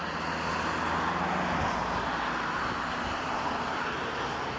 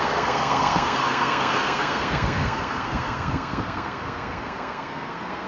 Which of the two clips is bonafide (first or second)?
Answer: first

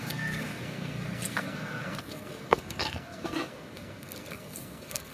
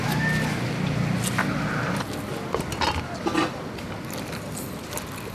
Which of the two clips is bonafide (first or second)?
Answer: second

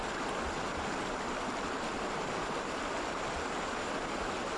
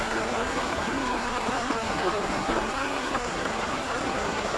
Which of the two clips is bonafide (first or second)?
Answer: first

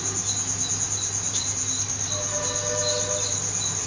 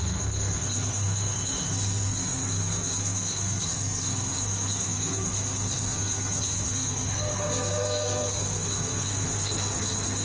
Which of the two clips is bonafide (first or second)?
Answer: first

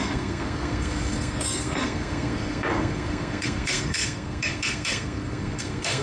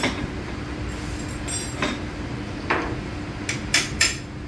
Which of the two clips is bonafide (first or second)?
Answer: second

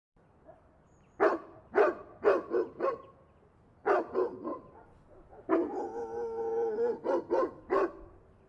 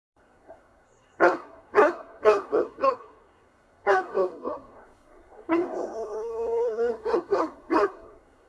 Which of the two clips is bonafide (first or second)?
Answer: first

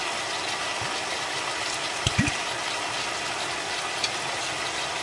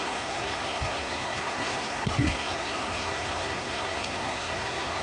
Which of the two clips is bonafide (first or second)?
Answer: first